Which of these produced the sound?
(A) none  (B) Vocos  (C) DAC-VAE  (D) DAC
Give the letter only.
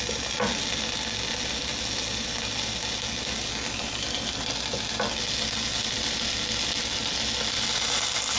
A